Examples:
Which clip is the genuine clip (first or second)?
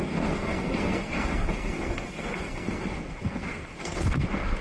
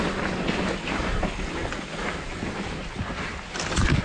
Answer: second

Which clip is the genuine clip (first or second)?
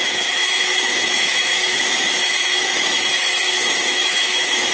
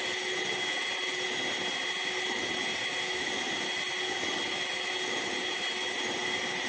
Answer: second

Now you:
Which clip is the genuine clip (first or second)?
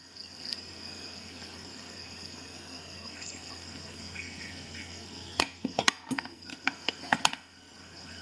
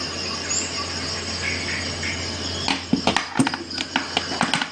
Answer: second